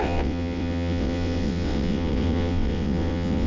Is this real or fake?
fake